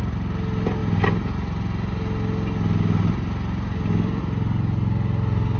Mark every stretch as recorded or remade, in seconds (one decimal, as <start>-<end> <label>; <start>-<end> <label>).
0.0-5.6 recorded